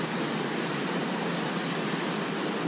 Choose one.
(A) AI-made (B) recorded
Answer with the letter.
B